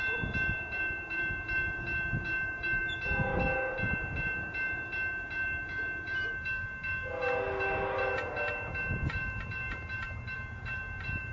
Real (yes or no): no